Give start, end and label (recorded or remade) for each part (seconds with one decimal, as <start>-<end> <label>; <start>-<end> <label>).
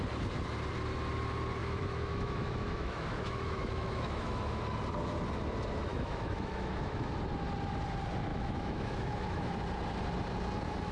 0.0-1.6 recorded; 1.6-4.6 remade; 4.6-5.9 recorded; 5.9-7.1 remade; 7.1-8.3 recorded; 8.3-9.5 remade; 9.5-10.9 recorded